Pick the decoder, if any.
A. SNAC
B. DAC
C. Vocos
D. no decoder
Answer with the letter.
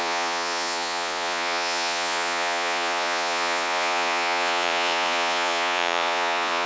C